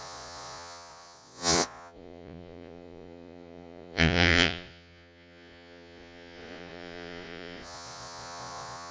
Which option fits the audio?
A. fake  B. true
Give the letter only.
A